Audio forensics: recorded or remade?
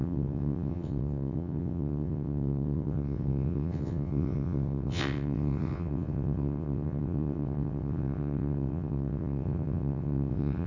remade